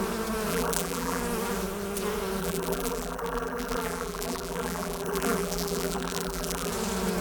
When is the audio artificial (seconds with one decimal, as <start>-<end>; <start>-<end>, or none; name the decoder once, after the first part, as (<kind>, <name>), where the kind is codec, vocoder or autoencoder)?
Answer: 0.5-1.2 (vocoder, BigVGAN v2); 2.4-6.7